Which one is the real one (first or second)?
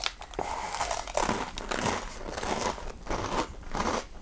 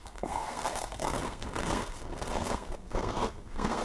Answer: first